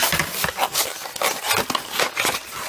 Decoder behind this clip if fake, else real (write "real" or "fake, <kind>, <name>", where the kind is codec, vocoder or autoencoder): real